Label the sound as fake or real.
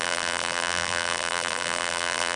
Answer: fake